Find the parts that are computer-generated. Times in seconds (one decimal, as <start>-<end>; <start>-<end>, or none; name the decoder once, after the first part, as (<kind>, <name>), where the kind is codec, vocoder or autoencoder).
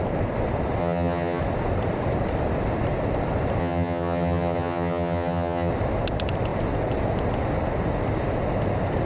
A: 0.8-1.4 (vocoder, HiFi-GAN); 3.6-5.7